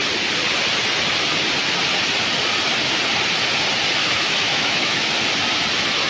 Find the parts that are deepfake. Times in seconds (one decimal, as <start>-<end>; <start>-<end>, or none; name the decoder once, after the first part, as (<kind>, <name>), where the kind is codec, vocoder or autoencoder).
4.0-5.1 (autoencoder, DAC-VAE)